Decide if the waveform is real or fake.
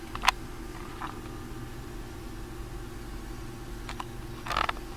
real